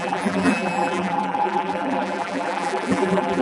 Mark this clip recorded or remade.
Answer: remade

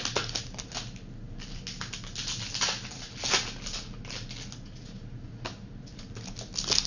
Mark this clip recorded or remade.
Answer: recorded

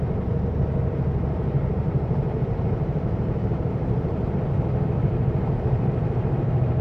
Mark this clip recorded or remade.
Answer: remade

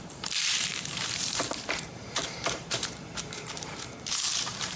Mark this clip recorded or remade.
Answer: remade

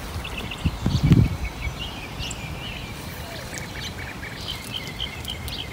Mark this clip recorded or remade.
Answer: remade